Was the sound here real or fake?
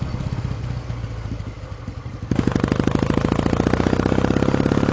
real